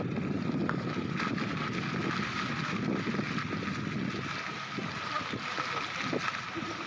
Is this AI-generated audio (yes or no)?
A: no